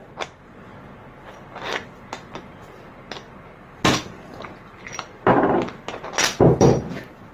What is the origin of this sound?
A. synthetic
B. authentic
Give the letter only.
B